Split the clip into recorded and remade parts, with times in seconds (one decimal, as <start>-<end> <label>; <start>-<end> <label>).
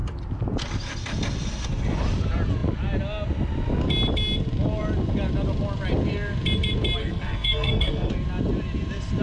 0.0-7.0 recorded; 7.0-8.1 remade; 8.1-9.2 recorded